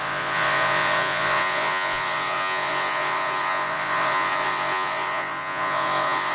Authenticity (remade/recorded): remade